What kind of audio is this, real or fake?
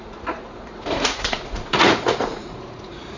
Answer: fake